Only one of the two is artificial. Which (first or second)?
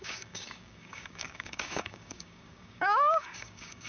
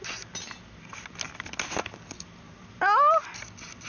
first